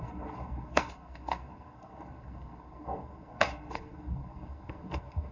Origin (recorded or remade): remade